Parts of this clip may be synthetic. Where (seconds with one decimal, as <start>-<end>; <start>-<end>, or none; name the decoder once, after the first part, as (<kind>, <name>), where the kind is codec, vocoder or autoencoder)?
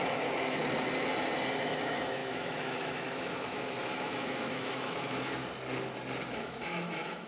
0.0-0.6 (autoencoder, DAC-VAE); 1.6-5.3; 6.3-7.3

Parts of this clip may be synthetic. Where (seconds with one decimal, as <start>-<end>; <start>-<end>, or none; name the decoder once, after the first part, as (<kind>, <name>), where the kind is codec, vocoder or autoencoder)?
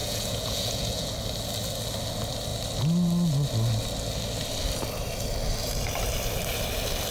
0.0-1.1 (vocoder, Vocos)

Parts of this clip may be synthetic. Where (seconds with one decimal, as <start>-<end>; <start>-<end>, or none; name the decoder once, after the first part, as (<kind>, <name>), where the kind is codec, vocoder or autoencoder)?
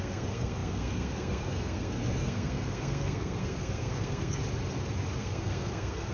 0.0-4.4 (codec, SNAC); 5.2-6.1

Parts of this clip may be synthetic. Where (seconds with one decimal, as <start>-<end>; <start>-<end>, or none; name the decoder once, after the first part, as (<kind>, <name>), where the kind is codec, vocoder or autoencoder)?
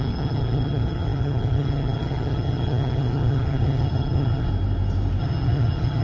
0.0-4.5 (vocoder, HiFi-GAN); 5.2-6.0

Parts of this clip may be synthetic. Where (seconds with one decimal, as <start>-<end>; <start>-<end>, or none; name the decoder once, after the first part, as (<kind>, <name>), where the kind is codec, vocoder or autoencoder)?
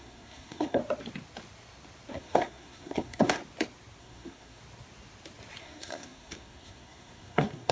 0.0-0.8 (codec, SNAC); 2.1-3.4; 4.0-4.6; 5.6-7.7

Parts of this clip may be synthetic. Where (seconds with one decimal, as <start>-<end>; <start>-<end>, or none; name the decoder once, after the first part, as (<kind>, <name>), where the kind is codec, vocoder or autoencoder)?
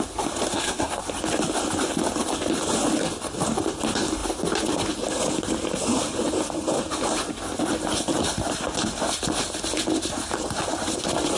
0.5-1.0 (codec, SNAC)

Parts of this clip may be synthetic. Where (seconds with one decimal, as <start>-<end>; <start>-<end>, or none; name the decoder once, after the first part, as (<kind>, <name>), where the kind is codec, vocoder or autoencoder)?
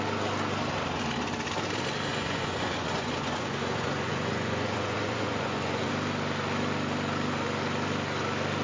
2.1-5.9 (vocoder, Vocos)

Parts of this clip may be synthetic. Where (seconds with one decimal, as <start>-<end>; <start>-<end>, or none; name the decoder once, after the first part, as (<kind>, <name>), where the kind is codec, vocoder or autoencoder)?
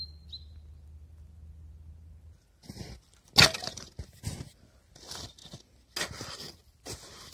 none